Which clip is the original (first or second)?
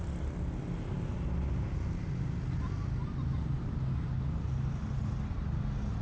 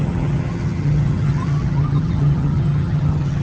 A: first